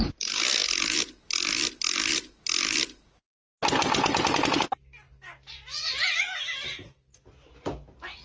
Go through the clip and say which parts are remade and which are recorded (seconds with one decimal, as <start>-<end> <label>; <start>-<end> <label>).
0.0-8.2 recorded